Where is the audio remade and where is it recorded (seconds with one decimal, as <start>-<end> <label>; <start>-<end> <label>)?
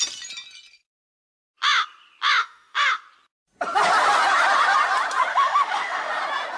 0.0-2.4 recorded; 2.4-2.9 remade; 2.9-5.3 recorded; 5.3-6.1 remade; 6.1-6.6 recorded